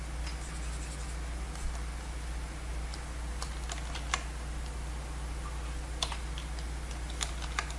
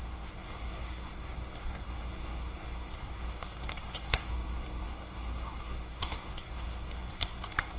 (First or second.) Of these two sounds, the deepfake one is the second